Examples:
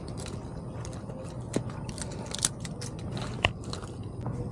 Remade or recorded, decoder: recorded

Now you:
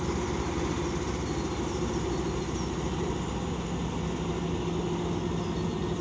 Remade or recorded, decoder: recorded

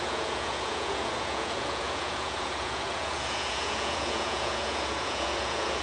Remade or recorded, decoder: remade, vocoder, Vocos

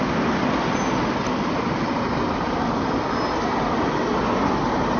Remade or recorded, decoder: recorded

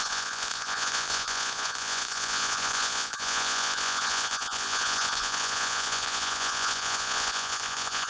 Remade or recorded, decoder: remade, vocoder, Vocos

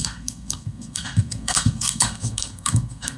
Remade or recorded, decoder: remade, codec, SNAC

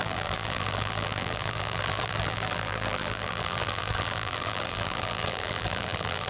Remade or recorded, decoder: remade, vocoder, BigVGAN v2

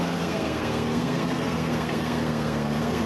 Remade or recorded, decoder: remade, codec, SNAC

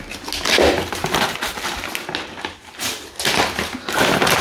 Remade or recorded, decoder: recorded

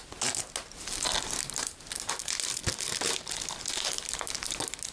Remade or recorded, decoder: recorded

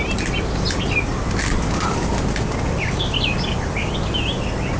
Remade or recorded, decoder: recorded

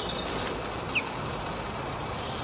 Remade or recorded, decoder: recorded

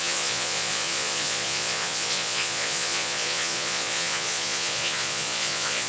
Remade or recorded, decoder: remade, vocoder, Vocos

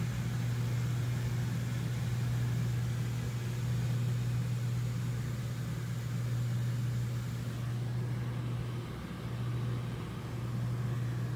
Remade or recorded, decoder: recorded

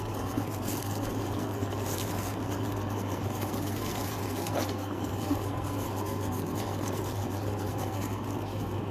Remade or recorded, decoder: remade, codec, SNAC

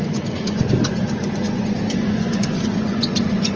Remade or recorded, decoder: remade, vocoder, Vocos